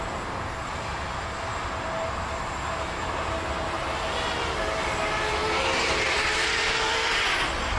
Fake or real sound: real